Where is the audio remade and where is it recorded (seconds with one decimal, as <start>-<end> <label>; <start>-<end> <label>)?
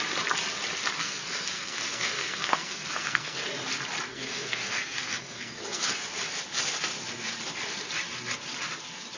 0.0-1.0 recorded; 1.0-3.4 remade; 3.4-4.1 recorded; 4.1-6.0 remade; 6.0-9.2 recorded